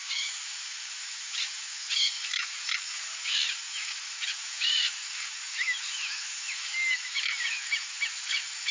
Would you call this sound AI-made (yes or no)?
yes